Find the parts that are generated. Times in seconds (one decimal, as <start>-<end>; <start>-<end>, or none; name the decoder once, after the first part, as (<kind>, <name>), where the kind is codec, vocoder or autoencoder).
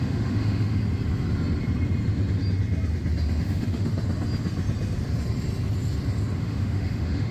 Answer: 0.0-0.8 (autoencoder, DAC-VAE); 3.4-3.9; 6.4-7.3